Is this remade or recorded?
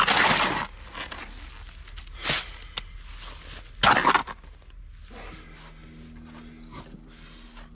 recorded